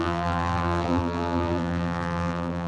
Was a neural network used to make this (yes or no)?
yes